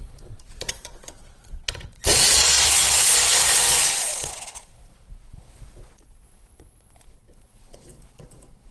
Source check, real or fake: fake